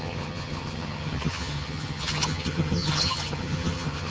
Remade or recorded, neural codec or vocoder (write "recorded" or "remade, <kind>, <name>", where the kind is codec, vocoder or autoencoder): remade, vocoder, HiFi-GAN